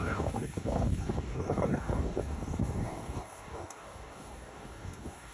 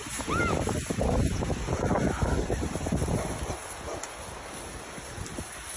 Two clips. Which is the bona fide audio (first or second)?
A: second